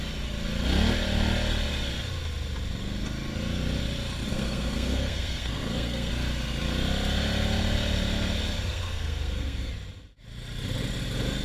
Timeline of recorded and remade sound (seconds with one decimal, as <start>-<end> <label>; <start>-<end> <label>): 0.0-4.3 recorded; 4.3-6.1 remade; 6.1-8.7 recorded; 8.7-9.7 remade; 9.7-11.4 recorded

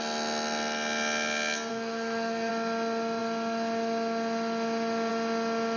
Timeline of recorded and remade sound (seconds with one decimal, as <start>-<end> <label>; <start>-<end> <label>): 0.0-1.7 recorded; 1.7-2.5 remade; 2.5-5.8 recorded

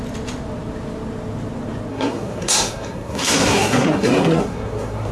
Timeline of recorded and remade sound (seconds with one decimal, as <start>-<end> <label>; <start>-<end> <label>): 0.0-1.9 recorded; 1.9-5.1 remade

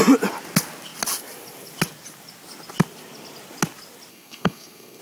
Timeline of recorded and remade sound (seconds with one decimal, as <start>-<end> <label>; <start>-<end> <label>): 0.0-4.1 recorded; 4.1-5.0 remade

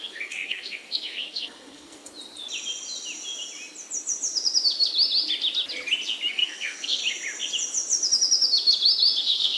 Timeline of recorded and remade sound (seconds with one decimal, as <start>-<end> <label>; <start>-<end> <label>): 0.0-2.1 remade; 2.1-6.3 recorded; 6.3-7.0 remade; 7.0-9.2 recorded; 9.2-9.6 remade

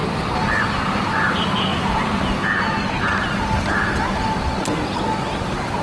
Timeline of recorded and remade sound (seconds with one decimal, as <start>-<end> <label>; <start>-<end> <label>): 0.0-5.8 recorded